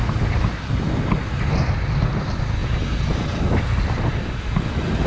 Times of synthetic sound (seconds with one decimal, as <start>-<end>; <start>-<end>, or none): none